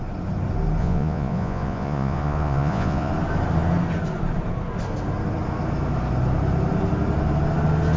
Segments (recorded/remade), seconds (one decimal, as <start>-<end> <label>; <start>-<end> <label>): 0.0-0.8 recorded; 0.8-3.1 remade; 3.1-8.0 recorded